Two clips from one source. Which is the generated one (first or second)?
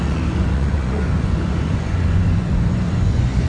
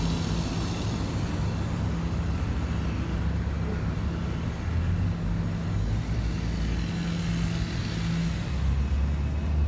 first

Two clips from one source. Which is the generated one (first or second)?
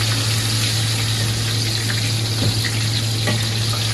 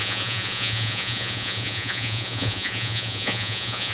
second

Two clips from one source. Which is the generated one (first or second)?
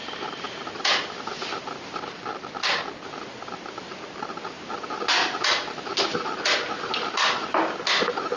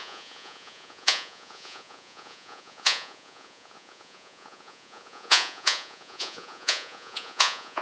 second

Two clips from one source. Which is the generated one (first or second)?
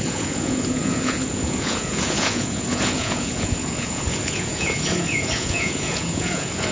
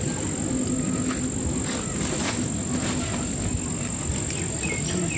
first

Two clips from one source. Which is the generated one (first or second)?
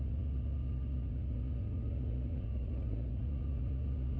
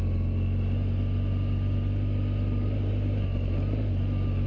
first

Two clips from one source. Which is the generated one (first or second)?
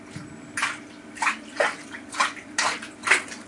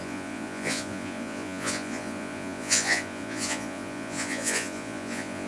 second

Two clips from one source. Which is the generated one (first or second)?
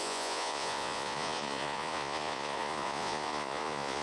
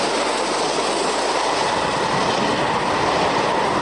first